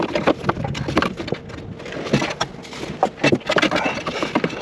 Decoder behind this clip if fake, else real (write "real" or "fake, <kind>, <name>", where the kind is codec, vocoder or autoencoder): real